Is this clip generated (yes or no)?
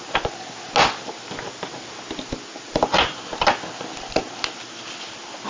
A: no